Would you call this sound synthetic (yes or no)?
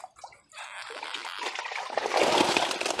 no